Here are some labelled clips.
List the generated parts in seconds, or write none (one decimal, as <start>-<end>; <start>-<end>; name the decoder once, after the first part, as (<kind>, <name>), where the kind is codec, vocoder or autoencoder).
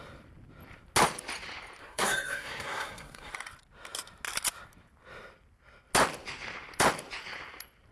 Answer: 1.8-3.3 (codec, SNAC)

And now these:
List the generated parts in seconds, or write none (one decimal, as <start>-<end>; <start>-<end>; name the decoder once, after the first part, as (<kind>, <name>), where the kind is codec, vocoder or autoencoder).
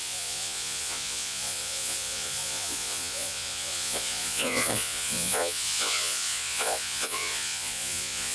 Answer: 0.0-8.3 (vocoder, Vocos)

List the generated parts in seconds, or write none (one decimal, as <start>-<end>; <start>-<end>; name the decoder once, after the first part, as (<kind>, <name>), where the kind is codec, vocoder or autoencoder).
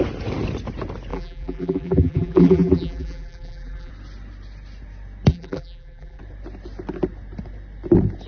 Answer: 1.1-3.9 (vocoder, BigVGAN v2); 5.3-6.2